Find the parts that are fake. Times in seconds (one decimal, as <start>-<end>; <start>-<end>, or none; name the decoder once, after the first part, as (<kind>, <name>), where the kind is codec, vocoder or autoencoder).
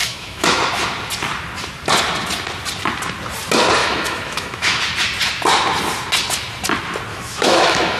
0.0-0.6 (autoencoder, DAC-VAE); 3.8-4.8; 7.1-8.0